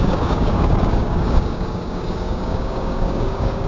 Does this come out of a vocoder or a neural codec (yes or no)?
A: yes